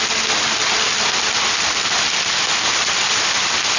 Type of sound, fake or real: real